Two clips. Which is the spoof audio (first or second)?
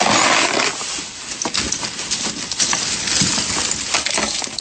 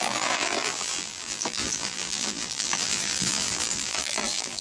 second